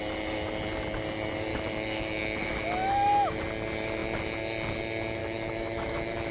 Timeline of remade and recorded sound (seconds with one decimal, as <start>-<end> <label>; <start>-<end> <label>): 0.0-1.5 recorded; 1.5-3.4 remade; 3.4-5.2 recorded; 5.2-6.3 remade